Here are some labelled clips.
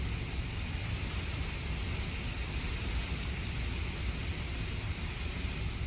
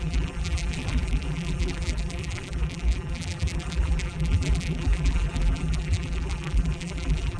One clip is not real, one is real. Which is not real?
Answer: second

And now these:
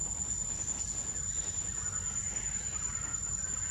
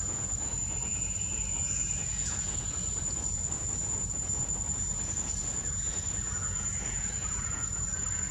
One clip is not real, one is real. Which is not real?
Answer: second